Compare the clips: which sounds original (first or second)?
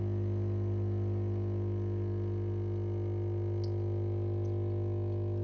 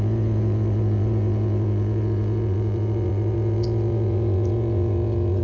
first